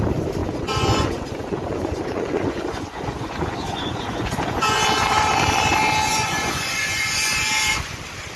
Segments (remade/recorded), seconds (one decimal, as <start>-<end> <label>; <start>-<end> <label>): 0.0-0.4 recorded; 0.4-4.8 remade; 4.8-6.1 recorded; 6.1-8.0 remade; 8.0-8.4 recorded